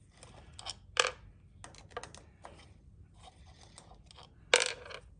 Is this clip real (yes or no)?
yes